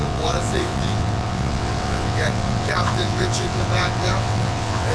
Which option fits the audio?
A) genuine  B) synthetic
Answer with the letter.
B